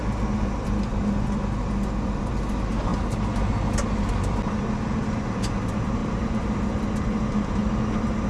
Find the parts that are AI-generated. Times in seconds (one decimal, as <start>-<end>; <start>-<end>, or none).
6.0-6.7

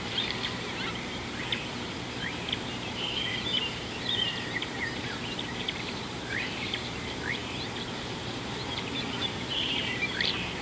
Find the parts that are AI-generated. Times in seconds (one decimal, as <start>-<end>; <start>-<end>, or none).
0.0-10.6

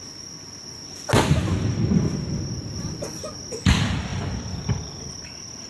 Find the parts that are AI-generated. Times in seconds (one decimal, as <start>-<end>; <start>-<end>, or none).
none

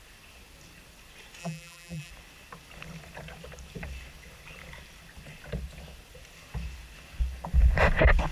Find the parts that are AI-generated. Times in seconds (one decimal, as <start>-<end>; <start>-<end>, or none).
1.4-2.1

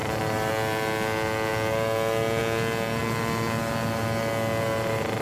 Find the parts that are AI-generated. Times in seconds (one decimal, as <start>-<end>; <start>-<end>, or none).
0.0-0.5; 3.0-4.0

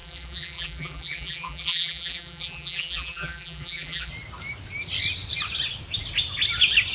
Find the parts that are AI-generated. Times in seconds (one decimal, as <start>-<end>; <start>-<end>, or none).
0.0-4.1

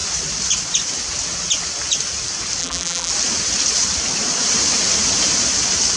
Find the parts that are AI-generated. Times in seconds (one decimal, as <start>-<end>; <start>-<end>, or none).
2.6-3.1